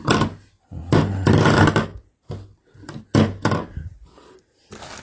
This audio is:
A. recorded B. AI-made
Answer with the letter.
A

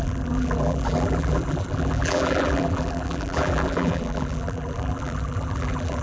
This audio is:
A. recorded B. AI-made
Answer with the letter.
B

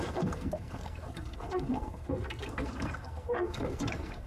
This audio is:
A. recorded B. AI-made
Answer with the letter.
B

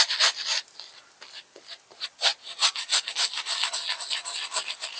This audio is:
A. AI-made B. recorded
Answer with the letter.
B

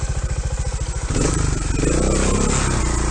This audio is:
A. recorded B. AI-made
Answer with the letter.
A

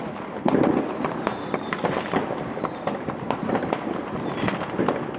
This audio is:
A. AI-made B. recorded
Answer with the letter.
B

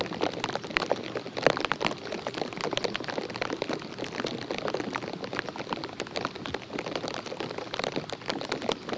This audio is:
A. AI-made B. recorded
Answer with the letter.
B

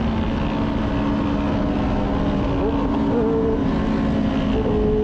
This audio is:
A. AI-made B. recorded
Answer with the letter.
B